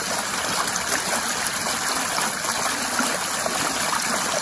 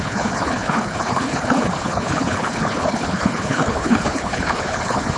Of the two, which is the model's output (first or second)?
second